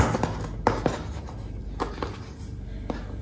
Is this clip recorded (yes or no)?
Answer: yes